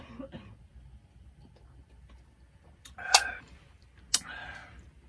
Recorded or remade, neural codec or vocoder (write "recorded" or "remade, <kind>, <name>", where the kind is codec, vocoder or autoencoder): recorded